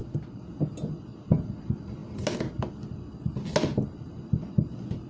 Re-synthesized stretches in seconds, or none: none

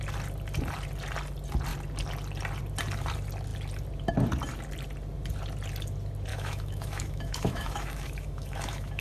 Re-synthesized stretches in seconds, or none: 6.3-9.0 (autoencoder, DAC-VAE)

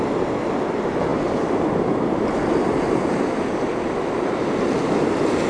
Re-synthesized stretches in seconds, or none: none